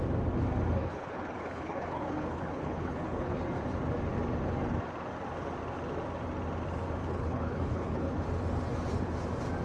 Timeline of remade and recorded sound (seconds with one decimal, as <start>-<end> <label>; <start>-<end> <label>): 0.0-0.8 recorded; 0.8-3.4 remade; 3.4-7.0 recorded; 7.0-8.2 remade; 8.2-9.6 recorded